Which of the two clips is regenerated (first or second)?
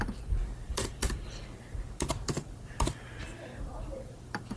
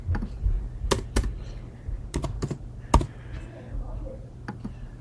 first